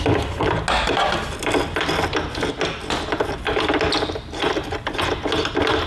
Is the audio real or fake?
real